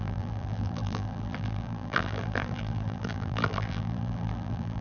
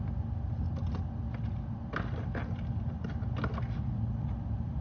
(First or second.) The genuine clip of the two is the second